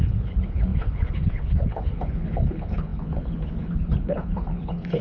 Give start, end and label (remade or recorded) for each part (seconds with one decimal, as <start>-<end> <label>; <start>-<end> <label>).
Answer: 0.0-5.0 remade

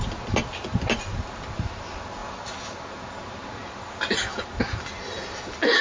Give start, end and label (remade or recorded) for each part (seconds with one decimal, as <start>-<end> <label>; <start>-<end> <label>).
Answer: 0.0-5.8 recorded

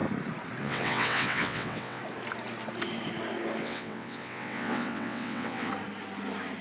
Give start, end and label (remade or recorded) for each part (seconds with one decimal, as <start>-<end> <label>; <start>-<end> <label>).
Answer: 0.0-0.6 recorded; 0.6-2.0 remade; 2.0-3.6 recorded; 3.6-5.7 remade; 5.7-6.6 recorded

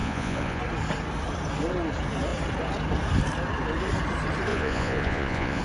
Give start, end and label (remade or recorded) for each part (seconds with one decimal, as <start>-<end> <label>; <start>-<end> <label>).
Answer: 0.0-0.6 remade; 0.6-4.5 recorded; 4.5-5.6 remade

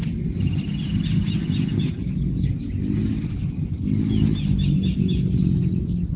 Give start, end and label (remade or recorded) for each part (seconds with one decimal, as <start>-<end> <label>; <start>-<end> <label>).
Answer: 0.0-6.2 recorded

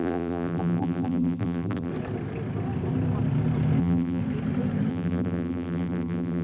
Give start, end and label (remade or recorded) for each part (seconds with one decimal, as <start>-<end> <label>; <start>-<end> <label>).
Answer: 0.0-1.9 remade; 1.9-3.8 recorded; 3.8-4.2 remade; 4.2-4.9 recorded; 4.9-6.4 remade

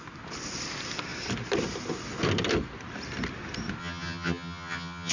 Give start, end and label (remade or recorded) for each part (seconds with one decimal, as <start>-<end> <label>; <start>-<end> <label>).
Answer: 0.0-3.8 recorded; 3.8-5.1 remade

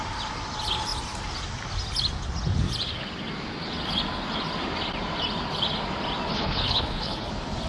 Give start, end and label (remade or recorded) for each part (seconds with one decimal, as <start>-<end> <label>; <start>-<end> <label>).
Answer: 0.0-6.3 recorded; 6.3-7.3 remade; 7.3-7.7 recorded